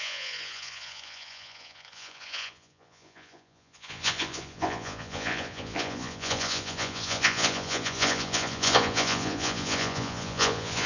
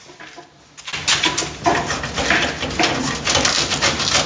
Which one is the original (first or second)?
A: second